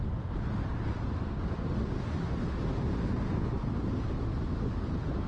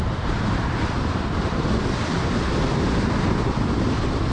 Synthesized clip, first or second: second